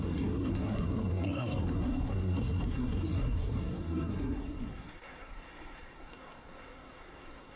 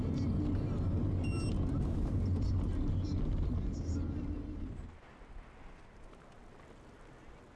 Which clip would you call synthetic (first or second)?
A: first